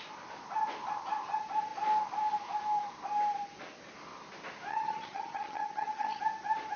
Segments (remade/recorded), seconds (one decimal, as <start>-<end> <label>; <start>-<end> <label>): 0.0-4.7 recorded; 4.7-6.2 remade; 6.2-6.8 recorded